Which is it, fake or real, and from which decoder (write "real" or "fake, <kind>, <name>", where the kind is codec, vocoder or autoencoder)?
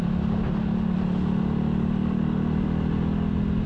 real